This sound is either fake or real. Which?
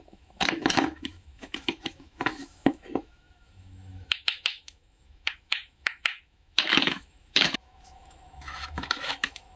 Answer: fake